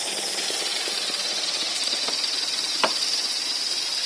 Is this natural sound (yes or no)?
no